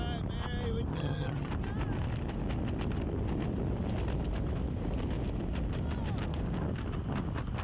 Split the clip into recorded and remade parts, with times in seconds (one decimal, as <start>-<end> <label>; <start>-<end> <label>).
0.0-0.9 recorded; 0.9-1.5 remade; 1.5-7.6 recorded